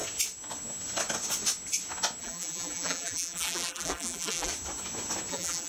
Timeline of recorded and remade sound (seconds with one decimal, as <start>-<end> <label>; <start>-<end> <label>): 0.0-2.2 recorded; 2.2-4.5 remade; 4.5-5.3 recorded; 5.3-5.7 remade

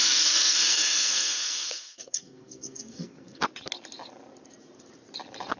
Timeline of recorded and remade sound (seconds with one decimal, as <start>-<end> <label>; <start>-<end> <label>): 0.0-3.4 remade; 3.4-5.6 recorded

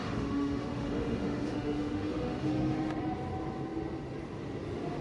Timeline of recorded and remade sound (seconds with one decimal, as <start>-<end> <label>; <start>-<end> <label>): 0.0-3.0 remade; 3.0-5.0 recorded

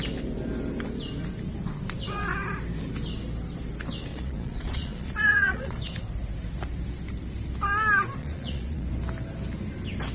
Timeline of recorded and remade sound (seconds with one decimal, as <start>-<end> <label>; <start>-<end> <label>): 0.0-4.1 recorded; 4.1-5.8 remade; 5.8-8.2 recorded; 8.2-8.9 remade; 8.9-10.1 recorded

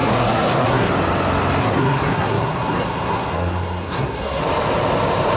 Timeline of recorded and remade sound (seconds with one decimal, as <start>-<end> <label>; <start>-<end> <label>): 0.0-0.9 remade; 0.9-1.6 recorded; 1.6-4.4 remade; 4.4-5.4 recorded

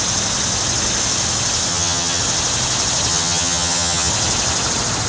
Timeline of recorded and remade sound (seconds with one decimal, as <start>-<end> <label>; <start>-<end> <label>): 0.0-1.7 recorded; 1.7-2.2 remade; 2.2-3.1 recorded; 3.1-4.1 remade; 4.1-5.1 recorded